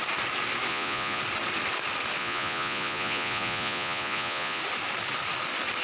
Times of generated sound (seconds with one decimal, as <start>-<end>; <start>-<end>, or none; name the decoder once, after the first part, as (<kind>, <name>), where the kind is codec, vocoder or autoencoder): 0.7-1.2 (vocoder, Vocos); 2.2-4.6